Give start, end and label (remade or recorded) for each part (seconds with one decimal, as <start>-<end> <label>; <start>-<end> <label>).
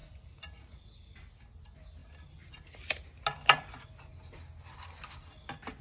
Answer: 0.0-0.8 remade; 0.8-5.8 recorded